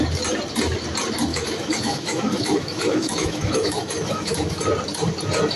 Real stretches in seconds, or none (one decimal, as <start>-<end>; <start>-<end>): 0.0-1.3; 4.6-5.6